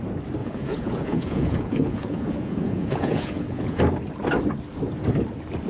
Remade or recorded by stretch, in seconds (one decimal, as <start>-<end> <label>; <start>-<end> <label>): 0.0-0.4 recorded; 0.4-3.8 remade; 3.8-5.7 recorded